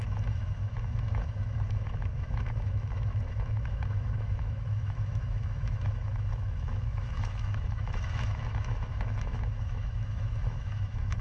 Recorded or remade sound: remade